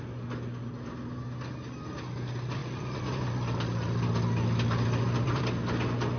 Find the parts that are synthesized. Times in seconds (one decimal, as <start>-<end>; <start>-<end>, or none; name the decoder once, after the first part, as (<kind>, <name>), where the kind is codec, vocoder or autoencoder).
2.6-5.4 (vocoder, BigVGAN v2)